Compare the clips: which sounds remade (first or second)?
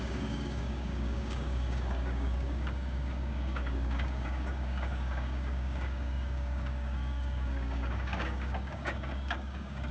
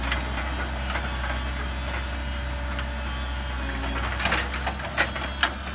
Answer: first